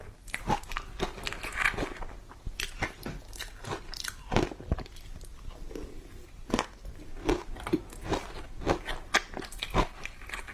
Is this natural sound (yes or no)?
yes